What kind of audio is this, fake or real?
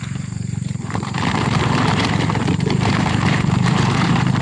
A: fake